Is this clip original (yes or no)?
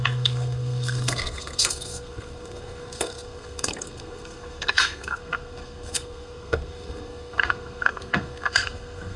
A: no